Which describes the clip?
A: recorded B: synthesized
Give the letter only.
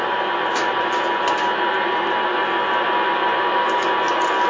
A